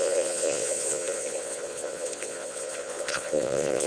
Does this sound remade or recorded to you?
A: remade